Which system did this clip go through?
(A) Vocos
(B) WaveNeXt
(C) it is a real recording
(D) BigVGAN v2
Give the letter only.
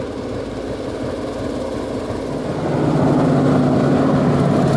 C